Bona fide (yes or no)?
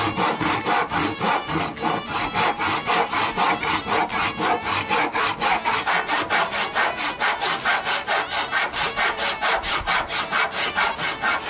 yes